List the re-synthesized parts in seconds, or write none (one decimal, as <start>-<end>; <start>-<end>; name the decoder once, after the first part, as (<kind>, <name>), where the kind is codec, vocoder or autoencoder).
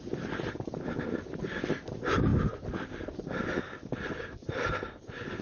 none